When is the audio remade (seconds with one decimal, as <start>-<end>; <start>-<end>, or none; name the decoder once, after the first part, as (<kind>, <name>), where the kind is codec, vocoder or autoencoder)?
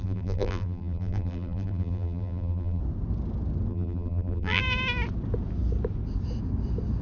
0.0-2.8 (vocoder, BigVGAN v2); 3.7-4.6